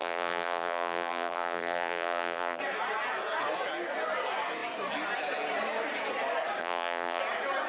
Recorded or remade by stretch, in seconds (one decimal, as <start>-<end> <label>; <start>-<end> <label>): 0.0-2.6 remade; 2.6-6.6 recorded; 6.6-7.2 remade; 7.2-7.7 recorded